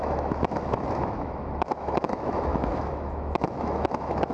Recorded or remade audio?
remade